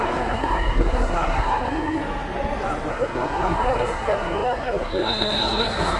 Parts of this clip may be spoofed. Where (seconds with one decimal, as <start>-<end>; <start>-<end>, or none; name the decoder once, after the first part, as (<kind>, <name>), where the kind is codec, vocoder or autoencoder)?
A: 0.0-2.0 (codec, SNAC); 2.9-6.0